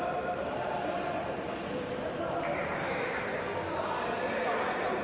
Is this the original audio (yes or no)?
yes